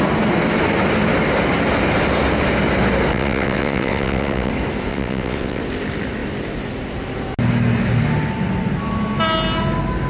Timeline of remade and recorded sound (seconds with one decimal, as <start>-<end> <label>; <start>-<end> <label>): 0.0-3.1 recorded; 3.1-4.5 remade; 4.5-4.9 recorded; 4.9-5.6 remade; 5.6-10.1 recorded